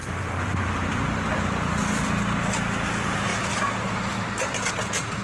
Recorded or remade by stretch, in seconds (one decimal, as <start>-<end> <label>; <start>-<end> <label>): 0.0-2.5 remade; 2.5-5.2 recorded